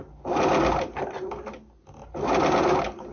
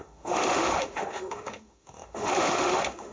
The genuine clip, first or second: first